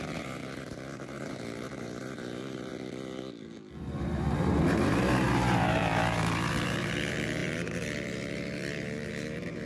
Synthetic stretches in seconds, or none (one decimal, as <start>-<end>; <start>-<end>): 0.0-2.7; 3.8-9.7